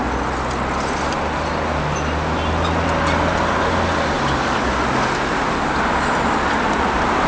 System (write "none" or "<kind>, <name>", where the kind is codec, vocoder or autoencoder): none